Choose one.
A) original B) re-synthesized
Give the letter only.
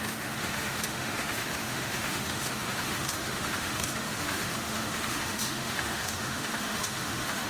B